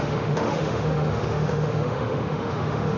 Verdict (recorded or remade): remade